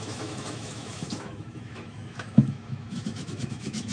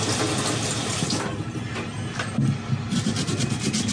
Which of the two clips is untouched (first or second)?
second